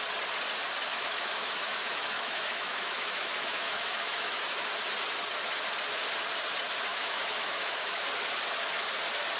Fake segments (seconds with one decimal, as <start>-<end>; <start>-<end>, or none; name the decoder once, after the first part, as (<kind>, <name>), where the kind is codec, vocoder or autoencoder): 0.9-4.4 (autoencoder, DAC-VAE); 6.9-8.0